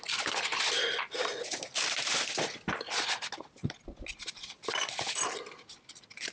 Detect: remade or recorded recorded